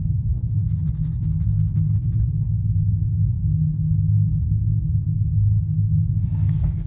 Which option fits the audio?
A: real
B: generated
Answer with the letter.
B